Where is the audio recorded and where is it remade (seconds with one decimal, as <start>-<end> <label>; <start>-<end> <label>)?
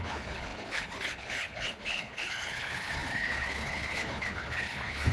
0.0-5.1 remade